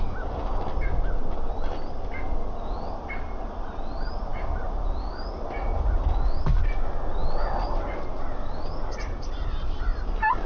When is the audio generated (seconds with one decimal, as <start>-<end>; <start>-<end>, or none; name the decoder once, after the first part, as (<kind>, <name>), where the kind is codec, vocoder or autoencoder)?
7.2-7.8 (vocoder, WaveNeXt)